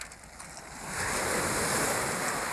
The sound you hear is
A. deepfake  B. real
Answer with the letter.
B